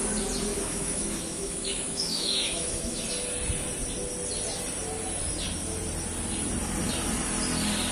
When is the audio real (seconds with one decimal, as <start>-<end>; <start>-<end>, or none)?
0.0-0.5; 3.0-7.9